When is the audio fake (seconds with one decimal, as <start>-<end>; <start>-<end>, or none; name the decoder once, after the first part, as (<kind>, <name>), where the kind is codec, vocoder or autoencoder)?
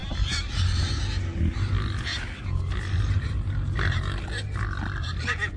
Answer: none